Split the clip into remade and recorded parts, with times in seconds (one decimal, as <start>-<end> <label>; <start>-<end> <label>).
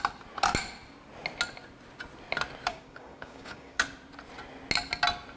0.0-2.7 recorded; 2.7-3.8 remade; 3.8-5.4 recorded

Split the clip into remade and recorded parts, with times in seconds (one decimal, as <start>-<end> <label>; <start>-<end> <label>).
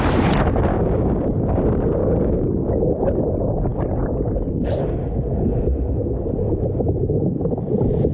0.0-0.7 recorded; 0.7-1.6 remade; 1.6-2.0 recorded; 2.0-2.7 remade; 2.7-8.1 recorded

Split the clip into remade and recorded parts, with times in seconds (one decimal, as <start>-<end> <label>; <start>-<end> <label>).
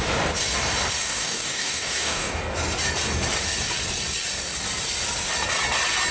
0.0-1.0 recorded; 1.0-2.4 remade; 2.4-6.1 recorded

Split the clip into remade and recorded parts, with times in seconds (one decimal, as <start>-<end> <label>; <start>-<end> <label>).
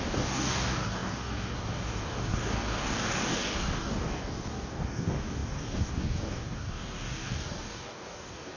0.0-8.6 remade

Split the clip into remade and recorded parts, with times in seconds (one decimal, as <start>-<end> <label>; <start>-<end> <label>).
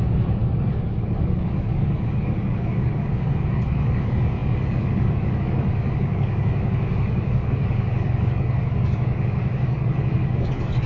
0.0-10.9 remade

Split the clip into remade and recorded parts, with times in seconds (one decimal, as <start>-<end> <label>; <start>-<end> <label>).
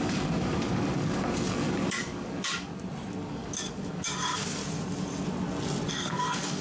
0.0-2.7 remade; 2.7-3.3 recorded; 3.3-4.6 remade; 4.6-5.9 recorded; 5.9-6.6 remade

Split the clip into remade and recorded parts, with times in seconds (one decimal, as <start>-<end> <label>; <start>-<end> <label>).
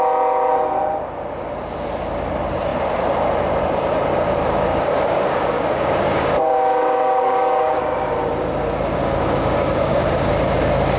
0.0-4.7 recorded; 4.7-7.8 remade; 7.8-9.0 recorded; 9.0-10.3 remade; 10.3-11.0 recorded